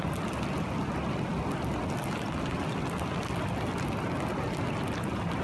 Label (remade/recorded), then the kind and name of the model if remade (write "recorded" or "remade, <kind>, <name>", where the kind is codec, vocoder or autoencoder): recorded